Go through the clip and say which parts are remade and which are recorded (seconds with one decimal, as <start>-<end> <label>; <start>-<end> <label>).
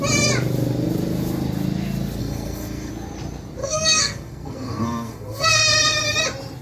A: 0.0-2.2 recorded; 2.2-2.9 remade; 2.9-3.6 recorded; 3.6-5.6 remade; 5.6-6.6 recorded